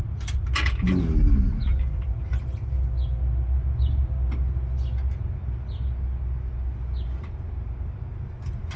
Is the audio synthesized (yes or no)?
no